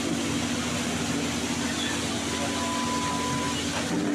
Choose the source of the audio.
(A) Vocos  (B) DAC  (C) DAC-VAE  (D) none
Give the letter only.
D